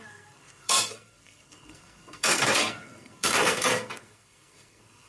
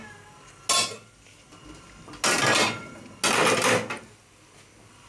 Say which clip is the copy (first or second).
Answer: first